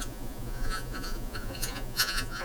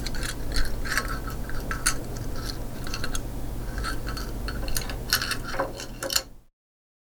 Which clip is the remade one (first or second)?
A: first